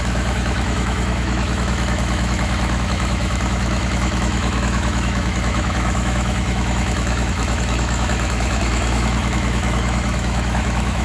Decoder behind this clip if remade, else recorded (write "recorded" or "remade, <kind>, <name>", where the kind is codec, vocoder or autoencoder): remade, autoencoder, DAC-VAE